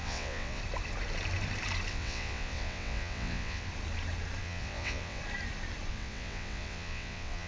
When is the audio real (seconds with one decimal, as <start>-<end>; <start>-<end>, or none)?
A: 0.6-1.9; 3.7-4.4; 5.2-5.9